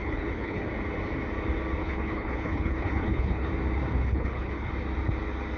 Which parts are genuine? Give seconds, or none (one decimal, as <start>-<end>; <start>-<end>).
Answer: 0.6-1.8; 3.5-3.9; 4.7-5.6